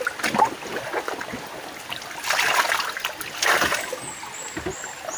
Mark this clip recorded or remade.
recorded